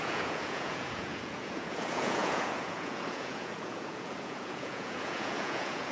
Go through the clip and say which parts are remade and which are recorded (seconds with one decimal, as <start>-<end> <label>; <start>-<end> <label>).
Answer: 0.0-5.9 remade